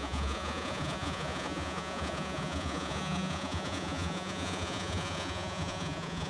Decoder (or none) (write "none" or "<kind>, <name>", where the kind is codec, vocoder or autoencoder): vocoder, Vocos